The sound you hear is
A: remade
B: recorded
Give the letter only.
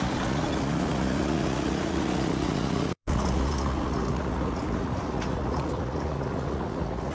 A